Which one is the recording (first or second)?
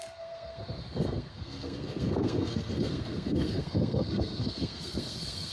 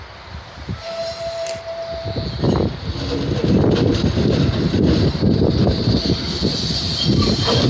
second